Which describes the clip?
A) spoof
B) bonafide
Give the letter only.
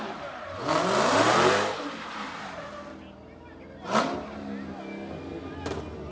B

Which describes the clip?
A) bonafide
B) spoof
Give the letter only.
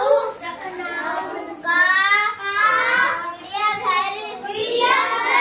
A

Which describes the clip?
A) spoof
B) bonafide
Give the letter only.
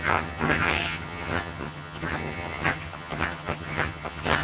A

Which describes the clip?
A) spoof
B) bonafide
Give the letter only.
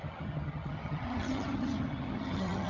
A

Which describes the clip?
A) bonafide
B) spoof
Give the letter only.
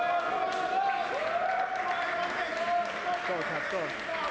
A